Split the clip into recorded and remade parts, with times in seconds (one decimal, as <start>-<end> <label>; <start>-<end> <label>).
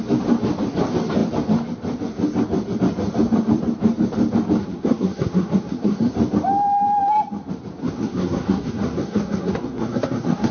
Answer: 0.0-4.6 recorded; 4.6-6.1 remade; 6.1-7.8 recorded; 7.8-10.5 remade